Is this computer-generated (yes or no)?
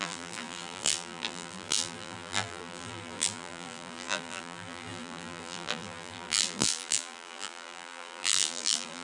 yes